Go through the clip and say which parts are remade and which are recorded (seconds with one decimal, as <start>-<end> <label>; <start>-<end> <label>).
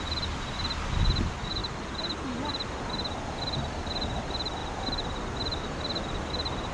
0.0-6.7 recorded